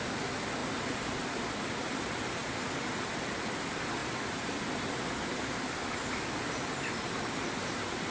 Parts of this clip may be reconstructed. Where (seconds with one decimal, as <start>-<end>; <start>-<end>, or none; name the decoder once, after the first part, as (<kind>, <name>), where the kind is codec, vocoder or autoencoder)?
none